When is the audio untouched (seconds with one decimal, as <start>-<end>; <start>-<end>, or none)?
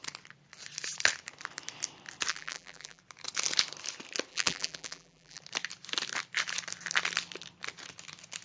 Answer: 0.0-2.3; 3.0-4.3; 5.4-8.4